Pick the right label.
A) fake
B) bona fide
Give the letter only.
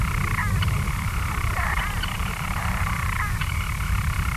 A